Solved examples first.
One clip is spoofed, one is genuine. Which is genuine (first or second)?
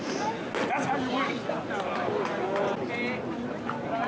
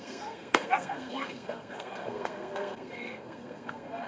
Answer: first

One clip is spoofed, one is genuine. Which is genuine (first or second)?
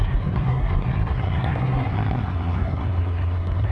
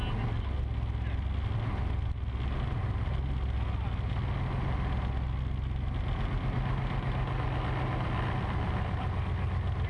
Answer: second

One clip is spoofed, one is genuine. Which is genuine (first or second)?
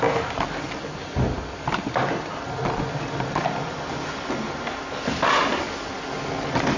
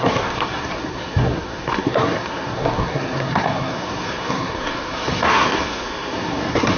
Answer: first